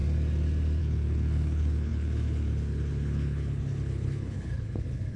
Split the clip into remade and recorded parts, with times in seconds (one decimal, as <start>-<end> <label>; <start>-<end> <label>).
0.0-0.8 recorded; 0.8-5.2 remade